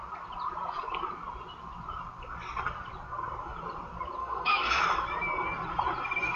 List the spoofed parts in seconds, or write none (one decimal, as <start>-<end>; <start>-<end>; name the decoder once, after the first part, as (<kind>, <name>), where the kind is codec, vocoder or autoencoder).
4.2-4.8 (codec, SNAC)